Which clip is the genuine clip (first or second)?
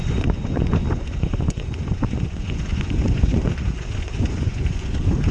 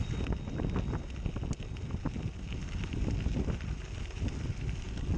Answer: second